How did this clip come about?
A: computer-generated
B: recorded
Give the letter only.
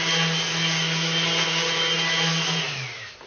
B